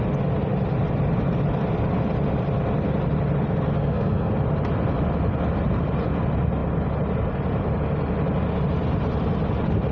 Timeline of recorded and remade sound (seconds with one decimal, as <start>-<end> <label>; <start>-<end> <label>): 0.0-3.8 recorded; 3.8-4.3 remade; 4.3-9.9 recorded